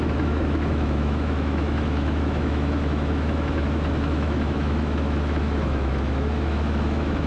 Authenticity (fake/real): fake